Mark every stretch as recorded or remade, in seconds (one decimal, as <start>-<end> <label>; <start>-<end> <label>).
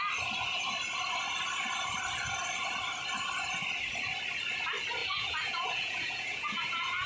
0.0-5.0 recorded; 5.0-7.1 remade